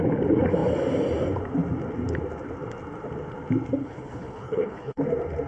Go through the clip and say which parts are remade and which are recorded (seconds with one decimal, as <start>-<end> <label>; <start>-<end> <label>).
0.0-3.8 recorded; 3.8-5.0 remade; 5.0-5.5 recorded